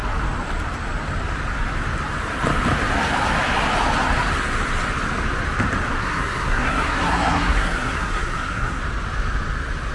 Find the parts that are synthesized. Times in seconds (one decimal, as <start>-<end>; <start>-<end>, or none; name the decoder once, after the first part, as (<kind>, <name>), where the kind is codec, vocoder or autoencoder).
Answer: 6.0-8.8 (codec, SNAC)